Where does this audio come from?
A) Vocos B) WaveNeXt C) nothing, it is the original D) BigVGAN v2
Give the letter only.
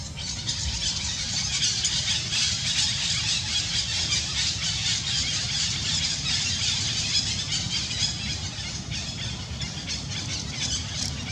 C